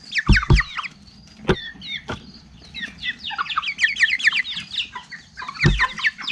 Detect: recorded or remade recorded